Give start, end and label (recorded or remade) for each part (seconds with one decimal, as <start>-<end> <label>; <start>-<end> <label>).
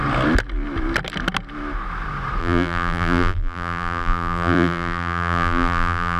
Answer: 0.0-2.4 recorded; 2.4-6.2 remade